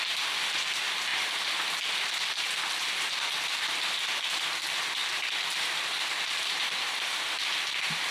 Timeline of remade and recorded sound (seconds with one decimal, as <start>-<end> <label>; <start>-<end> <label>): 0.0-1.1 remade; 1.1-3.7 recorded; 3.7-5.0 remade; 5.0-5.8 recorded; 5.8-8.1 remade